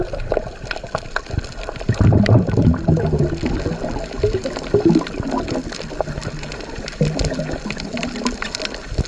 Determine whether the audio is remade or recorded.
recorded